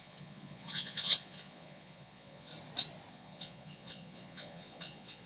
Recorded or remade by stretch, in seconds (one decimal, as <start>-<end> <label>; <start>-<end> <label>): 0.0-2.5 remade; 2.5-3.1 recorded; 3.1-5.3 remade

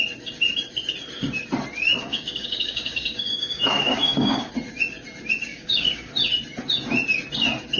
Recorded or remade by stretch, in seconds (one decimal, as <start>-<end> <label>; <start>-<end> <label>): 0.0-2.1 recorded; 2.1-4.5 remade; 4.5-5.5 recorded; 5.5-6.1 remade; 6.1-7.8 recorded

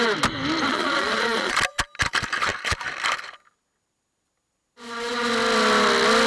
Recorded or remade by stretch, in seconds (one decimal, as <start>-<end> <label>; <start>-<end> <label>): 0.0-0.7 recorded; 0.7-1.5 remade; 1.5-6.3 recorded

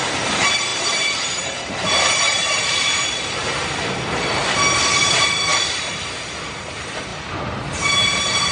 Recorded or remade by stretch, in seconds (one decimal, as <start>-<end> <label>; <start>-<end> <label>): 0.0-3.4 remade; 3.4-4.3 recorded; 4.3-5.5 remade; 5.5-6.4 recorded; 6.4-8.5 remade

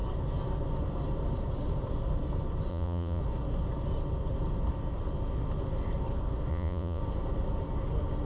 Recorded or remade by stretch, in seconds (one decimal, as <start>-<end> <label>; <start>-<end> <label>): 0.0-2.7 recorded; 2.7-3.2 remade; 3.2-6.5 recorded; 6.5-7.0 remade; 7.0-8.3 recorded

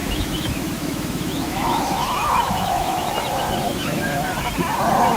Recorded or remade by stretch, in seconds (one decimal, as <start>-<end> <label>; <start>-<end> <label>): 0.0-3.1 remade; 3.1-3.7 recorded; 3.7-4.3 remade; 4.3-5.2 recorded

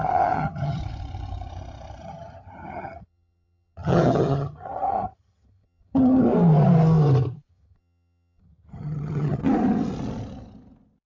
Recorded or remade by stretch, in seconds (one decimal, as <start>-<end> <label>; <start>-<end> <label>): 0.0-0.8 remade; 0.8-2.0 recorded; 2.0-6.3 remade; 6.3-7.5 recorded; 7.5-9.4 remade; 9.4-11.1 recorded